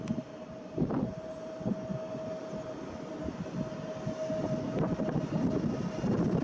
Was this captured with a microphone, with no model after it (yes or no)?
yes